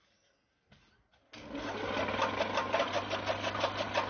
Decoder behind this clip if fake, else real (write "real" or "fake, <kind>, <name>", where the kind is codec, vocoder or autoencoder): real